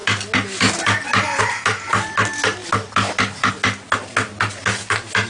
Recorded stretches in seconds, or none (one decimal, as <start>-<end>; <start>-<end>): 0.0-5.3